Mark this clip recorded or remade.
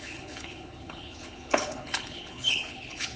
remade